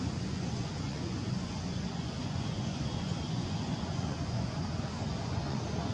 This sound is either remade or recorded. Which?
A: remade